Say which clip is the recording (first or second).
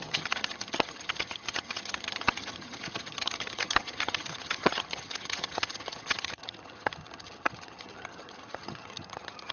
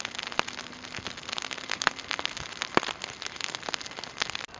second